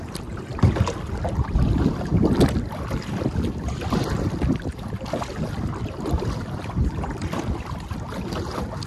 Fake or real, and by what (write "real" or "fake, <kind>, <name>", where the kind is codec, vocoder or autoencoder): real